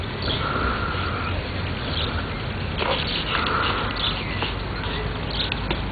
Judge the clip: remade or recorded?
recorded